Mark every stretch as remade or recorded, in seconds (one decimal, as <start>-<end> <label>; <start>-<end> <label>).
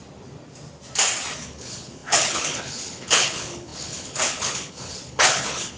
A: 0.0-1.4 recorded; 1.4-5.8 remade